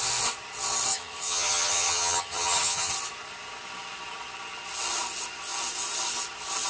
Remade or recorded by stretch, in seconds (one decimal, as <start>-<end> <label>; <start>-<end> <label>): 0.0-0.9 recorded; 0.9-2.9 remade; 2.9-6.7 recorded